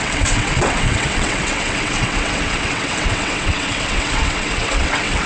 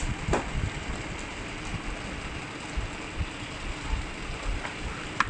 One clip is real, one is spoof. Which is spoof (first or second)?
first